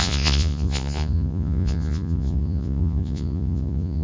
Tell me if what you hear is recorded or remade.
remade